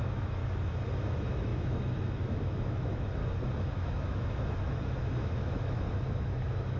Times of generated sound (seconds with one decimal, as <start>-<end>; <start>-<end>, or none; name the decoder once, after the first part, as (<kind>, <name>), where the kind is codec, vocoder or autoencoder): 0.0-0.4 (autoencoder, DAC-VAE); 1.0-3.2; 3.7-6.8